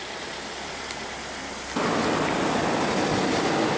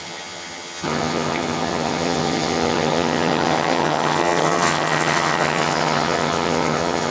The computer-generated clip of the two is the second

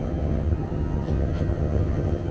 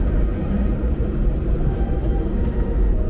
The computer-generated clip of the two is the first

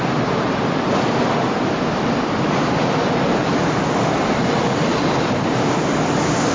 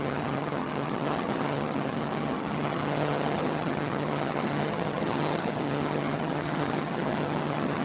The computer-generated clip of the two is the second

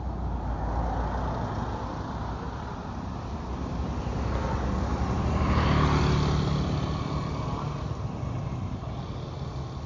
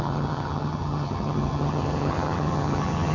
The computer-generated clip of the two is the second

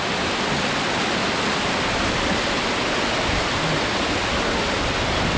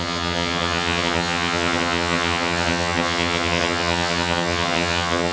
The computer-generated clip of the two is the second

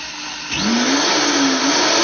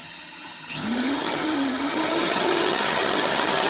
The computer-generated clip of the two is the second